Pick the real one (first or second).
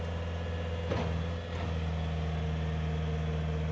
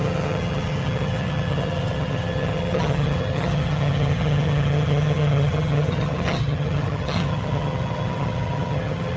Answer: first